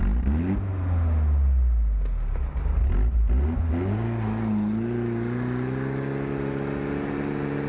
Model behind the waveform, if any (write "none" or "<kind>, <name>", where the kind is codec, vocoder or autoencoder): none